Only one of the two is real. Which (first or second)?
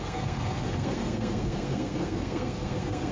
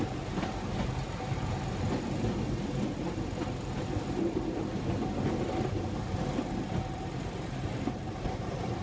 second